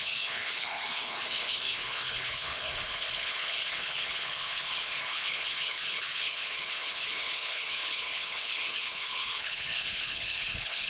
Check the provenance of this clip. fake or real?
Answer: fake